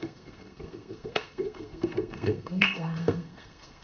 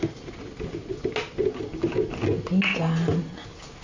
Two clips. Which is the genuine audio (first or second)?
second